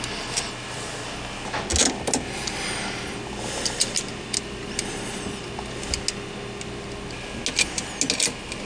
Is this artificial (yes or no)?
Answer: no